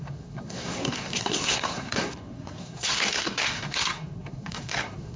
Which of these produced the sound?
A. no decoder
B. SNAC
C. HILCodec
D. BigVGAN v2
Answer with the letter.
B